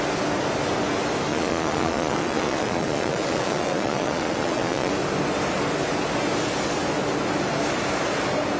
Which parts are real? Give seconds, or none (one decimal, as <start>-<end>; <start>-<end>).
0.0-1.3; 4.9-8.6